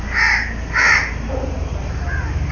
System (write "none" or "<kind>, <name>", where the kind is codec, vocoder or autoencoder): none